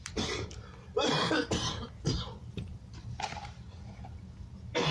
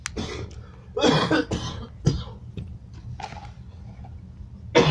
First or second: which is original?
second